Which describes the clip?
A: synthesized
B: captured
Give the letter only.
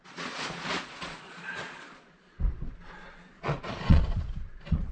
A